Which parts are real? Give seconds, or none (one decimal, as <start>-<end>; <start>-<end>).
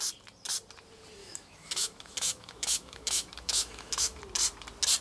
0.0-1.2; 4.2-5.0